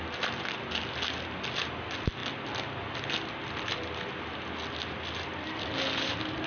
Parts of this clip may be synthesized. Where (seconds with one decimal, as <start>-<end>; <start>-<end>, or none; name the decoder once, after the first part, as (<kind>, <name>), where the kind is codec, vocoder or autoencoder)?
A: none

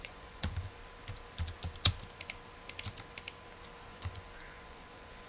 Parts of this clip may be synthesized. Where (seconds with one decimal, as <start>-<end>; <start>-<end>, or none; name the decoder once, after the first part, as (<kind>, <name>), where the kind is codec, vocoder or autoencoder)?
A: 0.0-0.8 (vocoder, Vocos); 3.9-5.3